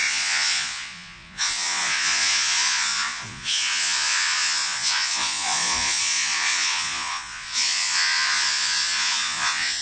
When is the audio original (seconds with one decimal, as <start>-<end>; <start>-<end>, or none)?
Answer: none